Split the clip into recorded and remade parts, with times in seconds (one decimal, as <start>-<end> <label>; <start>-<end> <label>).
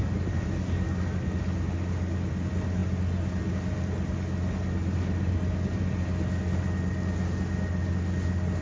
0.0-8.6 recorded